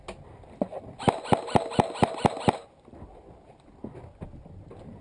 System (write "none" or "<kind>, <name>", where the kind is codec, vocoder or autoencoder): none